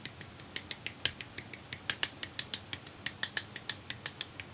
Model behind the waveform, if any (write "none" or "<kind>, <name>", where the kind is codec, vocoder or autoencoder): none